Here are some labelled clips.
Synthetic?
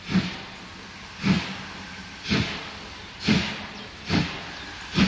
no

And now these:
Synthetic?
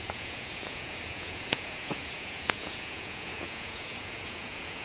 yes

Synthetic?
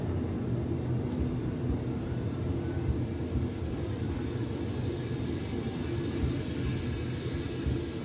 no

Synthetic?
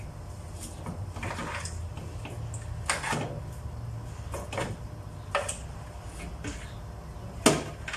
no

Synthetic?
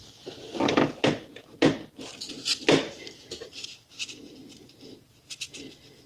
no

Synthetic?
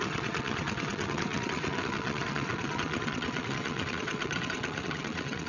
yes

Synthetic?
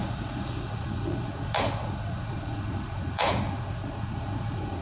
yes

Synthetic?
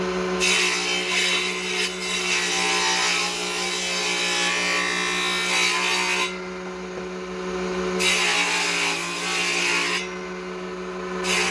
no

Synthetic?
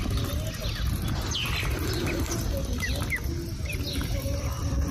no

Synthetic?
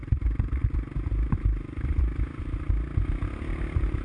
no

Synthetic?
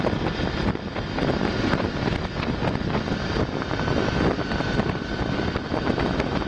no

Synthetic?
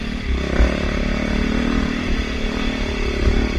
no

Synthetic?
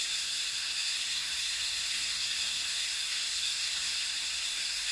yes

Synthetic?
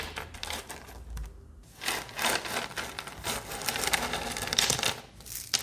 no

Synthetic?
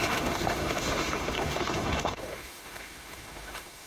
yes